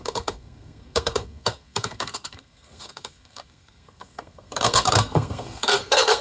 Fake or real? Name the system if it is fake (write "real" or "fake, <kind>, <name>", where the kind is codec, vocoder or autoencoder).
fake, codec, SNAC